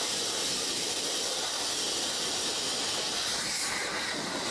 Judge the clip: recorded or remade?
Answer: recorded